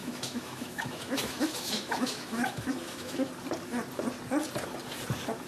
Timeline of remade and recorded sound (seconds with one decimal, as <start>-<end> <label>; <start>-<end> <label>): 0.0-3.3 remade; 3.3-5.5 recorded